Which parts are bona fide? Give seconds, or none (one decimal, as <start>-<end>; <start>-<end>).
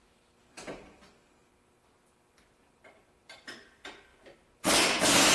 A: 0.0-5.3